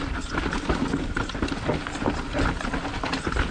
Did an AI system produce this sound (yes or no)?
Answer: no